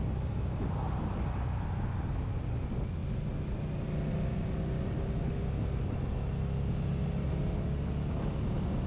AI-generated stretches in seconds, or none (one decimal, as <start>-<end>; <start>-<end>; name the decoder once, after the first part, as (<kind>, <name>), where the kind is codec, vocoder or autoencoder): none